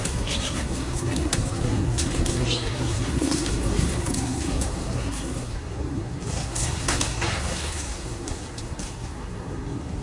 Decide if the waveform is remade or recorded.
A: remade